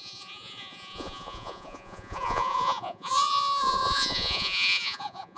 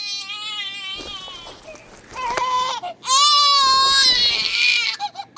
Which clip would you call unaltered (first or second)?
second